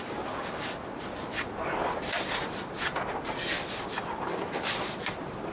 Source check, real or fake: real